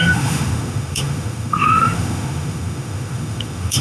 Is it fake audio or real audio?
fake